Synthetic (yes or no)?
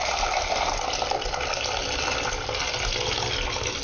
no